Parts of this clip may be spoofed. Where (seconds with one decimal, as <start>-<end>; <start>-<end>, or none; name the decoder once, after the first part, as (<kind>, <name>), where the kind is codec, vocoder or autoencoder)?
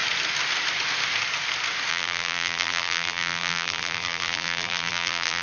1.9-5.4 (vocoder, BigVGAN v2)